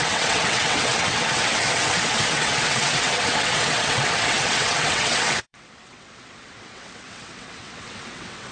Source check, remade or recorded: remade